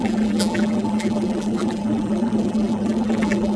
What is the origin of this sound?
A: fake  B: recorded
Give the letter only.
A